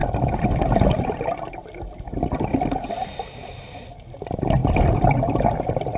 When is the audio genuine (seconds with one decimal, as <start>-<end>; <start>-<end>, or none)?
0.0-6.0